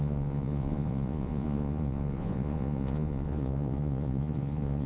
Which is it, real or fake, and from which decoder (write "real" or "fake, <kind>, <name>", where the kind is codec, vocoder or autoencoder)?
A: fake, vocoder, Vocos